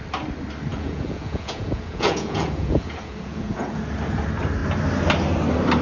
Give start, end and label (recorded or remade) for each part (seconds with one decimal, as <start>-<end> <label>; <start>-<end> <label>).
0.0-0.7 recorded; 0.7-3.8 remade; 3.8-5.8 recorded